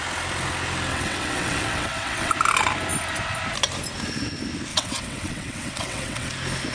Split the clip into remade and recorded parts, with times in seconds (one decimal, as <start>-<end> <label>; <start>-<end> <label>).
0.0-0.9 recorded; 0.9-2.3 remade; 2.3-4.7 recorded; 4.7-6.3 remade; 6.3-6.7 recorded